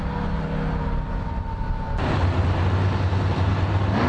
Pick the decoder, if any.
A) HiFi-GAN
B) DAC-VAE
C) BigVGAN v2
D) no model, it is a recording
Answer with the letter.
D